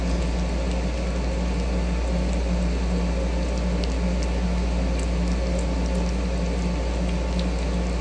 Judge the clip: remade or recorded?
recorded